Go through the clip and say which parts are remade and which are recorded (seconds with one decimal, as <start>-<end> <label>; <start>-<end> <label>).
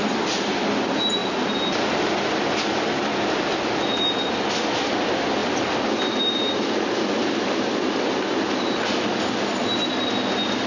0.0-10.7 recorded